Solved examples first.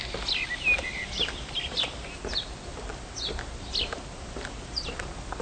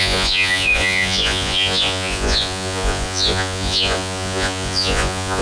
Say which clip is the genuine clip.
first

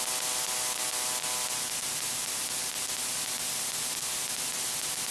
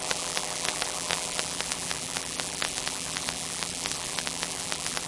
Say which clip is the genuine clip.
first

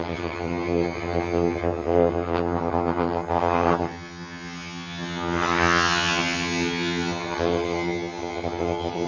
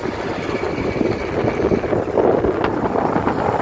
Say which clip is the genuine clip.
second